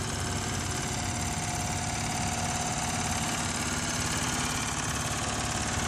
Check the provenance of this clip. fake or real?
real